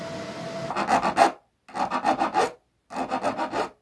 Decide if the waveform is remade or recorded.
recorded